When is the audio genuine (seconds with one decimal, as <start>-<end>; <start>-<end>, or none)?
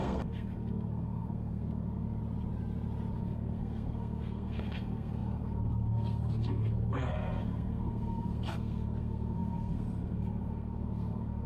2.2-3.2